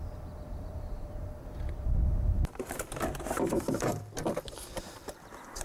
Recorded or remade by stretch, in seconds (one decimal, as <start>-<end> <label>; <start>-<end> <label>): 0.0-3.9 remade; 3.9-4.7 recorded; 4.7-5.6 remade